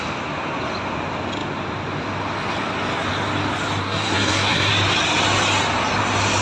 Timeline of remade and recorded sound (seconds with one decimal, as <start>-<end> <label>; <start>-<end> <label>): 0.0-3.8 recorded; 3.8-4.7 remade; 4.7-6.4 recorded